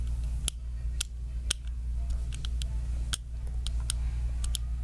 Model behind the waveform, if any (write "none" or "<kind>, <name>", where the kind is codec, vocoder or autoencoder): none